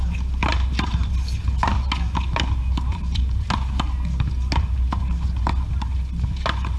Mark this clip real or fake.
real